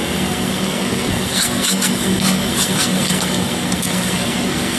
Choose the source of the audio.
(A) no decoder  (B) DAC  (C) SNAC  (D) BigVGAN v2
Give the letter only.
C